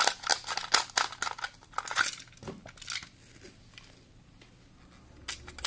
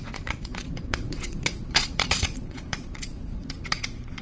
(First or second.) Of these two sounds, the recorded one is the first